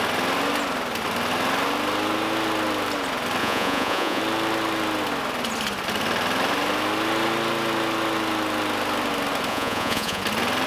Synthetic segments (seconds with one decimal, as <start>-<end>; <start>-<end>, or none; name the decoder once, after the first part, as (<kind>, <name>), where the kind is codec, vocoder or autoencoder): 3.4-4.2 (vocoder, Vocos); 9.5-10.2